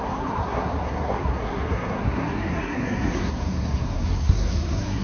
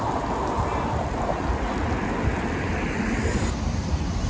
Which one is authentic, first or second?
second